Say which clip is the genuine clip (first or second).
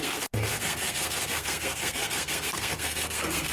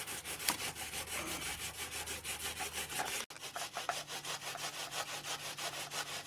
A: second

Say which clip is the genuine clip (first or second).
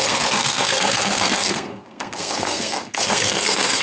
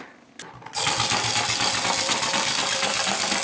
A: second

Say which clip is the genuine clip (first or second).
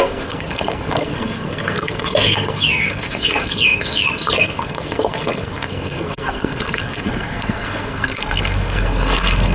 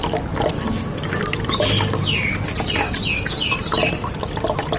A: second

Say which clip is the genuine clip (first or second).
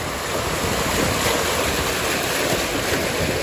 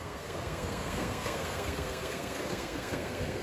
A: first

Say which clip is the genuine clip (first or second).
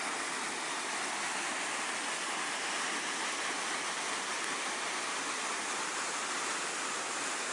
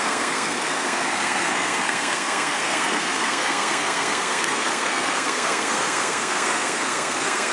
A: first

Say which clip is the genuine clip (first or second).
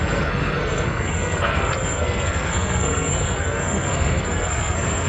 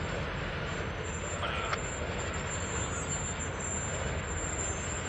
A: second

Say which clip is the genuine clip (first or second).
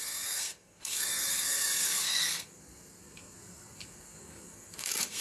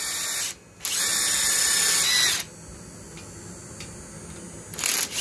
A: second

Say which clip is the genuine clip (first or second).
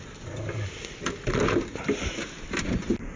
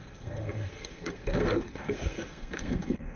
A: first